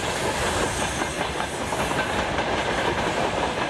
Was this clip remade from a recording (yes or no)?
no